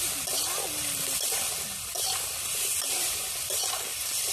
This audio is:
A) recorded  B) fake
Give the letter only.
A